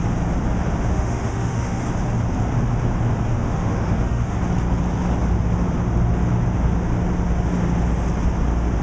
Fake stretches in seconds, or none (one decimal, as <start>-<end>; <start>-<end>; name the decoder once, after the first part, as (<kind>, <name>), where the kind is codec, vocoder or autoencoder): 0.9-1.9 (autoencoder, DAC-VAE); 3.3-4.4